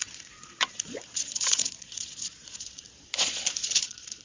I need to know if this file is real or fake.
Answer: fake